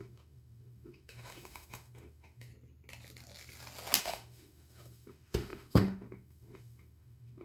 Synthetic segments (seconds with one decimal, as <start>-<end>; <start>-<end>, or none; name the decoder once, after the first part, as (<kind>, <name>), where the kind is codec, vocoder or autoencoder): 0.0-2.5 (autoencoder, DAC-VAE); 4.0-7.4